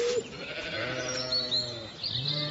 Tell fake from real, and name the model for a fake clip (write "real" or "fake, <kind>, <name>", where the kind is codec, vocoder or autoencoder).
real